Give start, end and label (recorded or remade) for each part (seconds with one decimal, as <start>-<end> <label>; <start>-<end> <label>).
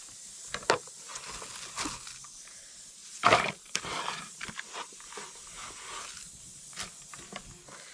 0.0-1.1 remade; 1.1-2.5 recorded; 2.5-4.9 remade; 4.9-7.9 recorded